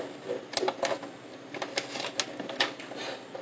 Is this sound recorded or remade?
recorded